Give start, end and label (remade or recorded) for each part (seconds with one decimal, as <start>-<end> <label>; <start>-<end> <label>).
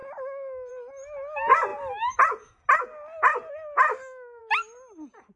0.0-3.9 recorded; 3.9-4.4 remade; 4.4-5.4 recorded